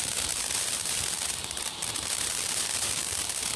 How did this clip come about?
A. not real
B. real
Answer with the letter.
A